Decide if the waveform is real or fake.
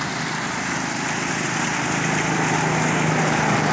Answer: real